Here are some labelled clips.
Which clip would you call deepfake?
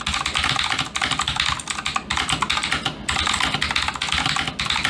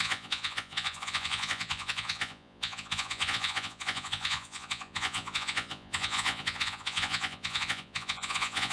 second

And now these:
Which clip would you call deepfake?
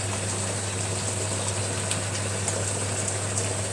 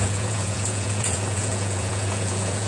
second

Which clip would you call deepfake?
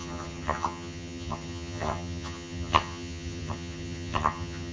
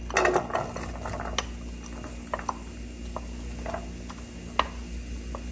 first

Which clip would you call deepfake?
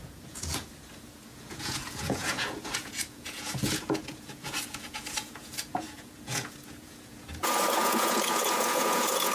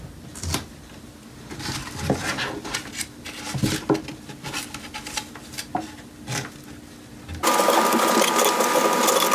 first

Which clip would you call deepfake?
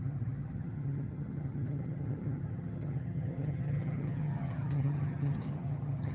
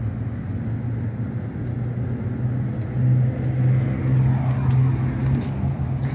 first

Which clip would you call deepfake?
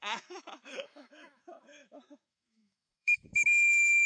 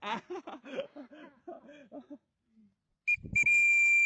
first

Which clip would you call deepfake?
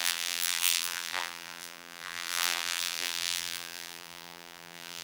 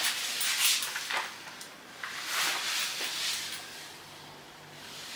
first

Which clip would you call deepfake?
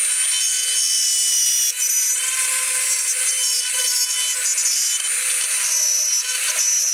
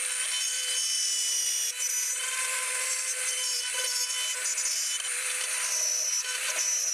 second